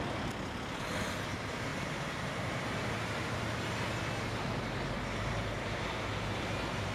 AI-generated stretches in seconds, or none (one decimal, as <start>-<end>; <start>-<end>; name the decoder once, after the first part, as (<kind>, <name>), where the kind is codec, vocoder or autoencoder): none